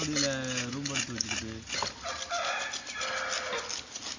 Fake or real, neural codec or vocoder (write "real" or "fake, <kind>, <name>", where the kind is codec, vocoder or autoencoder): real